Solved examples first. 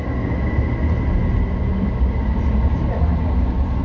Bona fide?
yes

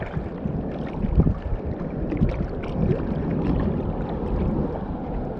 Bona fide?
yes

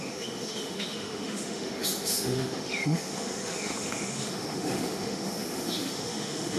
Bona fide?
no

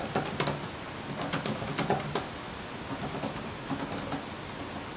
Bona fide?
yes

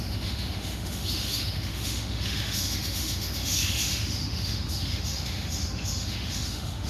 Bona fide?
no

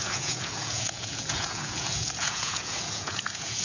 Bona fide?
no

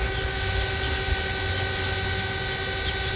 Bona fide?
yes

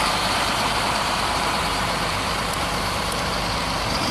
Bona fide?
no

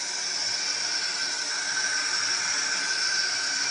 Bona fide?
yes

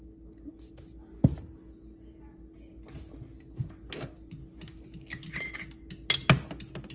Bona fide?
yes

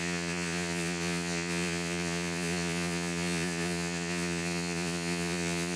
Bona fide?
no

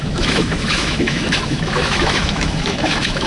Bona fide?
no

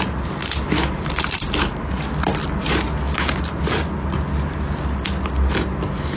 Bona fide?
yes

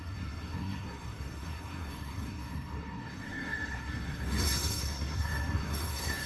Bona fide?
no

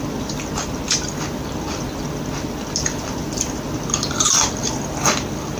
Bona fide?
yes